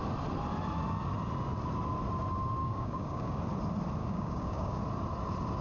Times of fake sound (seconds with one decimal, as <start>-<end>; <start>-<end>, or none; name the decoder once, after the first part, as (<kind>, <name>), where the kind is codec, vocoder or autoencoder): 2.6-3.4 (codec, DAC); 4.0-4.8